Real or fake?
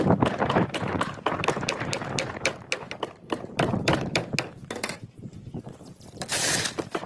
fake